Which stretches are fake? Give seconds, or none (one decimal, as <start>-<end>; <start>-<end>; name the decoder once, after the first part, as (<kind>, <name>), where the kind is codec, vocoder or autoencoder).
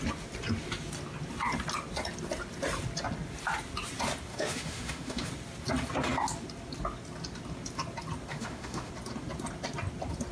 4.3-5.3 (autoencoder, DAC-VAE); 8.3-8.9